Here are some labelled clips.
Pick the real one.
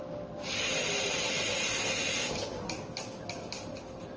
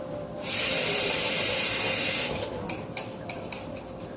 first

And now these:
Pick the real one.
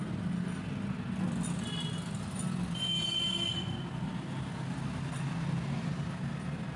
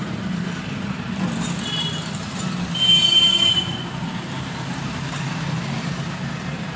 first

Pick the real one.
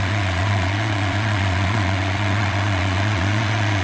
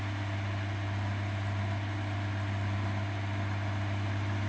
second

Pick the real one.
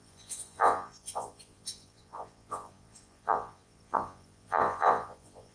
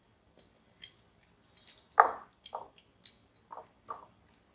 second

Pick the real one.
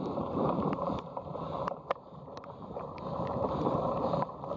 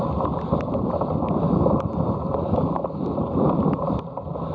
second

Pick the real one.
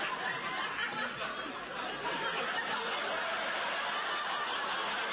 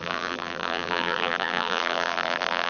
first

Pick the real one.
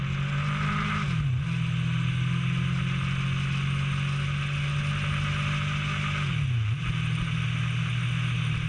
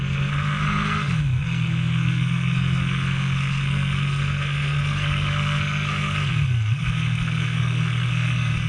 first